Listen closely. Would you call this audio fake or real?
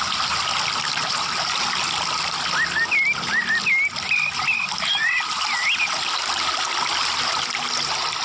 real